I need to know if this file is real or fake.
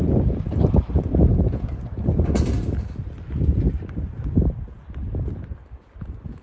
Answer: real